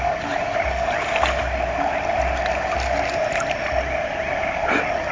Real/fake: real